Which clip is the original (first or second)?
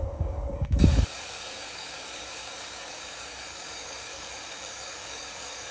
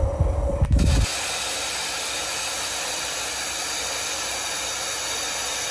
second